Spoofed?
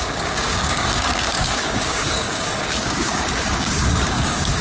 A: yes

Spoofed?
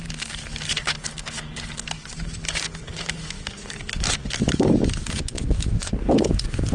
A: yes